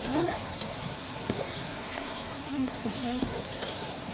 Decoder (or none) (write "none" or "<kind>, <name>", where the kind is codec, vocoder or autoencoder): codec, SNAC